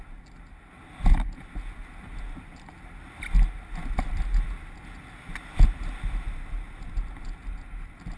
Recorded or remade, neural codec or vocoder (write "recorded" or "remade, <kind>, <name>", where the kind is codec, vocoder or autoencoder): recorded